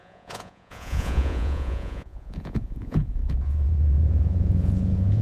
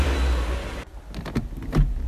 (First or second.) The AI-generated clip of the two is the first